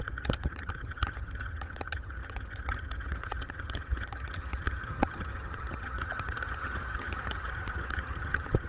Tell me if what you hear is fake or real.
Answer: fake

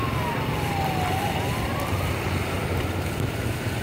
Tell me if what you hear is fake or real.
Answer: real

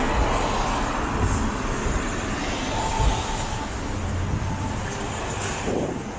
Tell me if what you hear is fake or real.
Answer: real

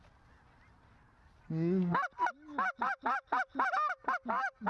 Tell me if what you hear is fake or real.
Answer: real